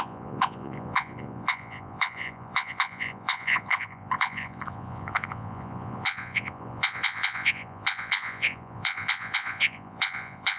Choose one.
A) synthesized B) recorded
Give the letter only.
A